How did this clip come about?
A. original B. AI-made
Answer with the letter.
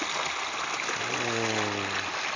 A